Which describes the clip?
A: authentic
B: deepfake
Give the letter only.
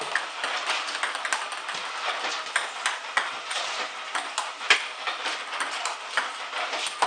B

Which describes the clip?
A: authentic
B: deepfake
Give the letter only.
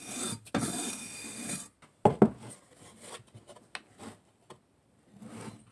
A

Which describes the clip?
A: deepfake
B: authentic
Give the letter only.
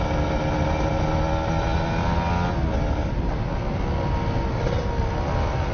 B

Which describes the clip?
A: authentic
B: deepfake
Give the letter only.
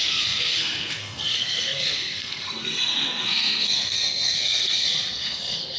B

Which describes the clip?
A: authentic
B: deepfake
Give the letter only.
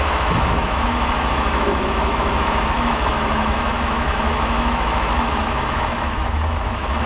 B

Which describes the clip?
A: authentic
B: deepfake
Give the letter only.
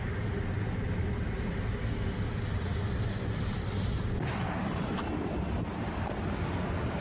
A